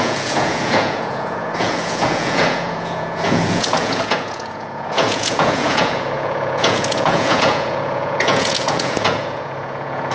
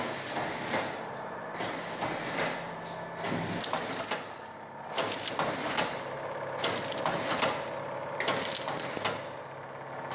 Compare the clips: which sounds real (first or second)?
second